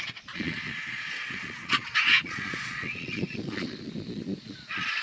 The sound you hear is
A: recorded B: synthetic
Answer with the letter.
B